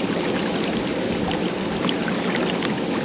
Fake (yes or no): no